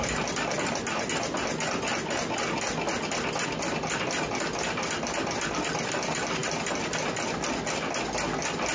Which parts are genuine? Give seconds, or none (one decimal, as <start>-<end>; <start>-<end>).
0.0-8.7